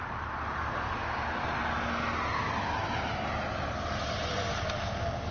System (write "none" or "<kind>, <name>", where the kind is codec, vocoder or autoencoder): none